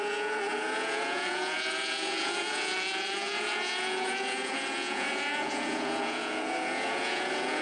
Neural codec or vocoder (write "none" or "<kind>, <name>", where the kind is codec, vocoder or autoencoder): vocoder, Vocos